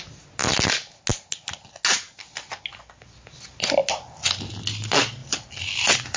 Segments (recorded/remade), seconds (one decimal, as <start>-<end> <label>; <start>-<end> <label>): 0.0-5.2 recorded; 5.2-6.2 remade